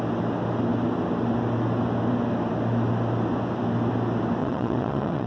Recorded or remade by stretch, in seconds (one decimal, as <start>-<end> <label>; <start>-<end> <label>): 0.0-4.4 recorded; 4.4-5.3 remade